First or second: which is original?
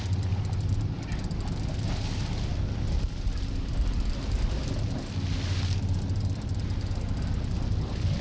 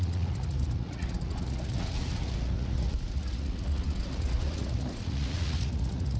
first